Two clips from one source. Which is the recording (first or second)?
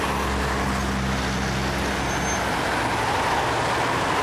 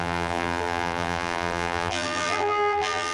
first